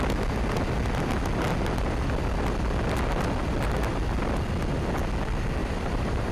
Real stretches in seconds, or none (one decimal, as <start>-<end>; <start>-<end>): 0.0-5.6